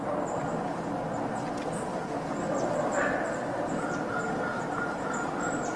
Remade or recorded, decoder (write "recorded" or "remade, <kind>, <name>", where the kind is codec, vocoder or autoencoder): recorded